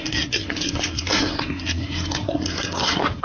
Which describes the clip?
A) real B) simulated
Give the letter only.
B